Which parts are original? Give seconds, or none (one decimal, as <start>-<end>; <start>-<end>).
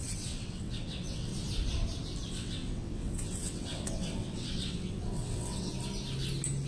1.3-2.3; 5.7-6.7